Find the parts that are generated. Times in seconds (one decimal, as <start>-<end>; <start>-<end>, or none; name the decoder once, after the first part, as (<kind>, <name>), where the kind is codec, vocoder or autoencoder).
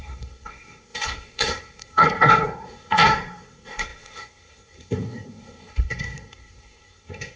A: 0.0-7.4 (codec, SNAC)